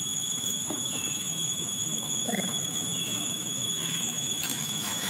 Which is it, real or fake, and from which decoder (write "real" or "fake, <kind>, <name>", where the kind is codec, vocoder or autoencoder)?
fake, autoencoder, DAC-VAE